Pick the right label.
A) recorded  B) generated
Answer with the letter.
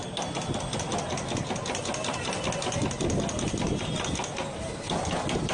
A